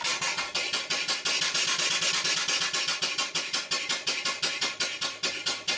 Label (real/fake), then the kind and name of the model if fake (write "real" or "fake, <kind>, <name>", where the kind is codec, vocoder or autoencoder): real